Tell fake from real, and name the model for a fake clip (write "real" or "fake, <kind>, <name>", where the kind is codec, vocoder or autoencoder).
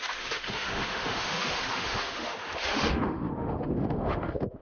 fake, autoencoder, DAC-VAE